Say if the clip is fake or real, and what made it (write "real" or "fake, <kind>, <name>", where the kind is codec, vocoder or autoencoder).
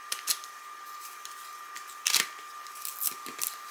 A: real